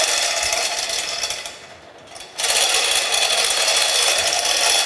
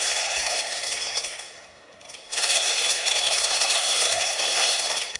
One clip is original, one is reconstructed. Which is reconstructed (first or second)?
second